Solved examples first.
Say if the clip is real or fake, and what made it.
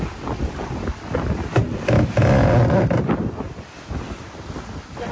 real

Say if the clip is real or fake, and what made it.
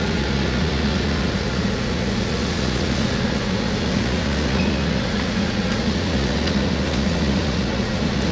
fake, vocoder, Vocos